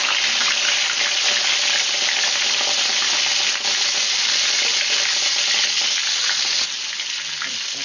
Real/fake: real